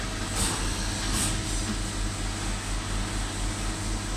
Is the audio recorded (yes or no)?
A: yes